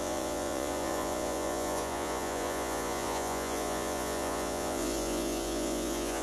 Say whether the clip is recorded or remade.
remade